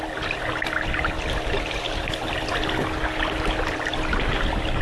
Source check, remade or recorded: recorded